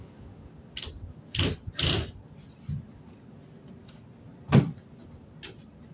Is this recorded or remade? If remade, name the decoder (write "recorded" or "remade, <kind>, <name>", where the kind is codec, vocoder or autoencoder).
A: recorded